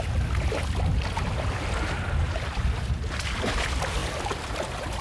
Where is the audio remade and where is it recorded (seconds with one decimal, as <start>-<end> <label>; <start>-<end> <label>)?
0.0-5.0 recorded